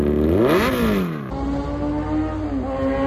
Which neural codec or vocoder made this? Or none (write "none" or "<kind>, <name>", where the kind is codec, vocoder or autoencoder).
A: none